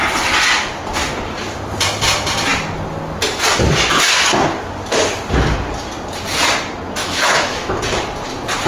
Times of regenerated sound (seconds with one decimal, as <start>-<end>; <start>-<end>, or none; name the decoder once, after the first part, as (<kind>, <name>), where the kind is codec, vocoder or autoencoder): 7.0-7.8 (autoencoder, DAC-VAE)